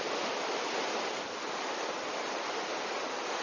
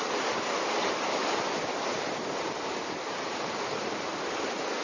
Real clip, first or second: second